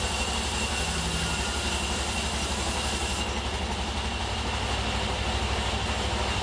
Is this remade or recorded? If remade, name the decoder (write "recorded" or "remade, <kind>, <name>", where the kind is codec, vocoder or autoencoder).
recorded